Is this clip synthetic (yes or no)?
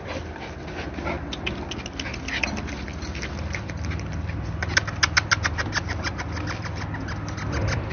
no